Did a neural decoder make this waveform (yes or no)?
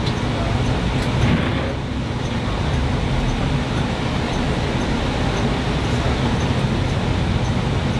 no